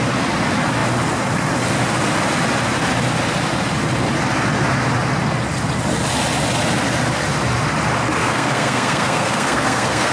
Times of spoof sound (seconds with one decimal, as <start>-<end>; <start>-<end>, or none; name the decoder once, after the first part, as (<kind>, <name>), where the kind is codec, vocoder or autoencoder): 8.2-10.1 (codec, SNAC)